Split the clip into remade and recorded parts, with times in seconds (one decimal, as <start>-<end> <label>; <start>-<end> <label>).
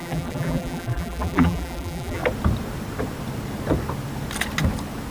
0.0-2.2 remade; 2.2-5.1 recorded